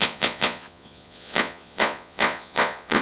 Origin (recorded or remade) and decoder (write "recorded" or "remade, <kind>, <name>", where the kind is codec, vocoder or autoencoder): remade, vocoder, Vocos